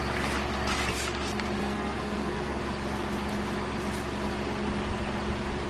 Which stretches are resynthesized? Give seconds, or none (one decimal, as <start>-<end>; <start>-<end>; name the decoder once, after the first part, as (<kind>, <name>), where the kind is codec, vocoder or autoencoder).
1.6-2.6 (codec, SNAC)